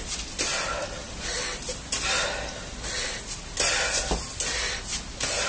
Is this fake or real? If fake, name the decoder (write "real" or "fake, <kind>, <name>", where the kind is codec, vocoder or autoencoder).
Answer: real